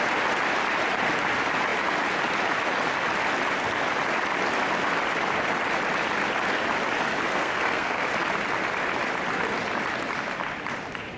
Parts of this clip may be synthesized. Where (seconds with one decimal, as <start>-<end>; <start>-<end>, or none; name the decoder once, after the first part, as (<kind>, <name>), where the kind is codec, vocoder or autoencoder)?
7.3-8.1 (codec, SNAC)